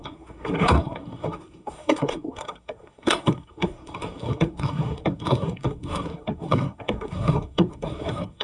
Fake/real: fake